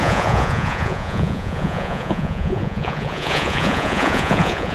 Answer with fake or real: fake